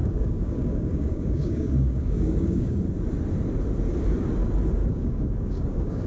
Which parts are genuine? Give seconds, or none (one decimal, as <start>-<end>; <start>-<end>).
2.8-4.8